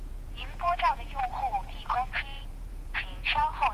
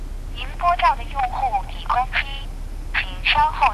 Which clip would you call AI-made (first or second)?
first